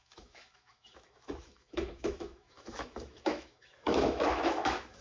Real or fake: fake